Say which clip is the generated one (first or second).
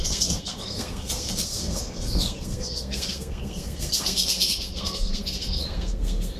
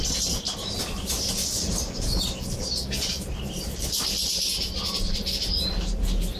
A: first